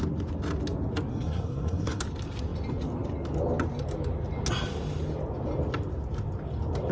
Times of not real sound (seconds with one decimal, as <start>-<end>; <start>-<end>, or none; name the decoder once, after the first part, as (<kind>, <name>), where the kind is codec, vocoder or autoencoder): 1.1-2.0 (codec, SNAC)